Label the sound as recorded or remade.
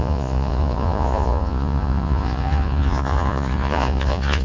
remade